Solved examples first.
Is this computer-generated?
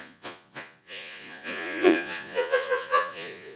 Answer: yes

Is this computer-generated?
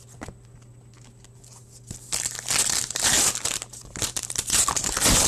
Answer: no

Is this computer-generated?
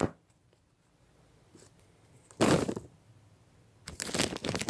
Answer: no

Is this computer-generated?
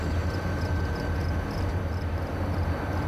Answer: no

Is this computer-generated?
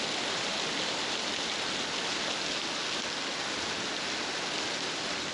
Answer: no